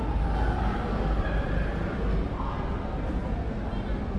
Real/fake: real